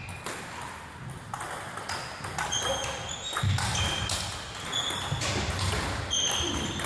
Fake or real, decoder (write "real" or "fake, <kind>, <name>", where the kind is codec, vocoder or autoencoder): real